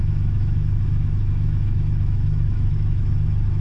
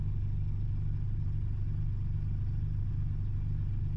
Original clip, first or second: second